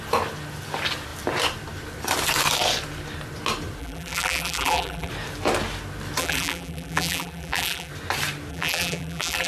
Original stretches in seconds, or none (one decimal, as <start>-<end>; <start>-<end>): 0.0-3.8; 5.1-6.2; 7.9-8.5